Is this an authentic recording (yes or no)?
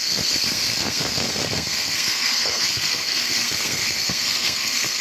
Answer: no